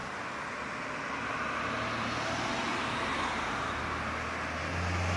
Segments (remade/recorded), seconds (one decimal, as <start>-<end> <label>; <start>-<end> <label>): 0.0-5.2 recorded